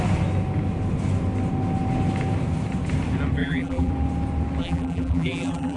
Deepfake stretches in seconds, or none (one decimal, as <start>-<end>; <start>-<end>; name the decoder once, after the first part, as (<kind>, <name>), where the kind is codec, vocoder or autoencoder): 3.4-3.9 (vocoder, BigVGAN v2); 4.6-5.8